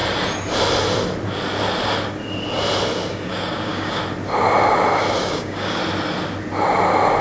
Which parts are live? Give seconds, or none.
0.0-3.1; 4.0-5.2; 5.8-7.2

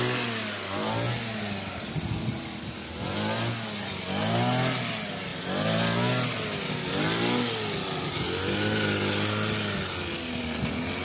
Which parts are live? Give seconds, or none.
0.0-11.0

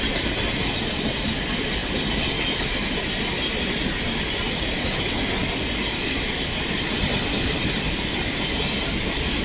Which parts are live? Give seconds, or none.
0.0-9.4

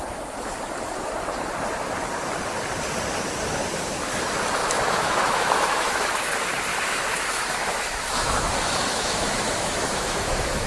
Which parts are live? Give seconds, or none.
0.0-4.6; 6.3-6.7

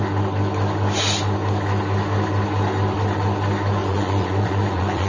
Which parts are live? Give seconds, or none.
0.0-3.8

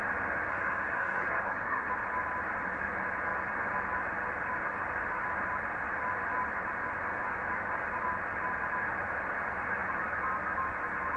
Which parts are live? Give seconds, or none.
0.0-0.5; 1.9-11.2

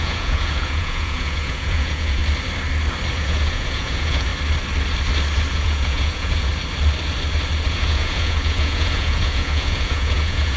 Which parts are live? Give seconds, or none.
2.2-3.1; 4.3-5.5; 6.5-7.7